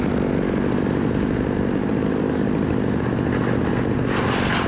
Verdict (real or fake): real